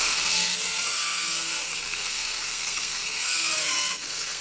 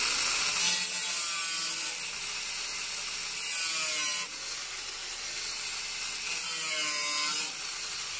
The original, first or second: second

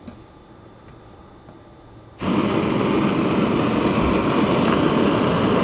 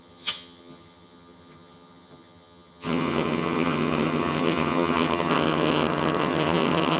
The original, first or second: first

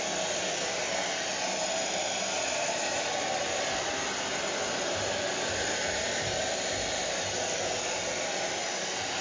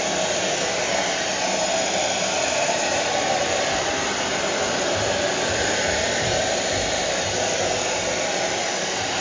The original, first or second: first